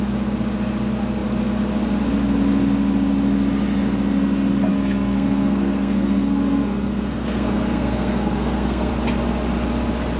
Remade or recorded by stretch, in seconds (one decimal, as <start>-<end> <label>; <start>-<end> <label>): 0.0-4.7 recorded; 4.7-8.9 remade; 8.9-10.2 recorded